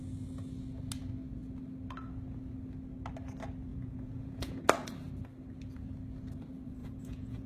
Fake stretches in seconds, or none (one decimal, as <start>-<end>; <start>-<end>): 3.7-4.6; 6.8-7.5